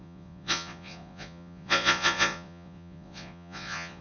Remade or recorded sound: remade